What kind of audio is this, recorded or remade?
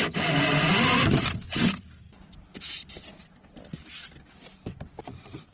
recorded